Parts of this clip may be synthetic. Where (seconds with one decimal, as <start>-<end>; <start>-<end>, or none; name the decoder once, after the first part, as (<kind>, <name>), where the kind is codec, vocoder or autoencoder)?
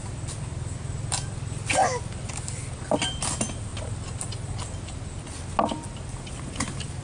3.7-4.5 (vocoder, BigVGAN v2)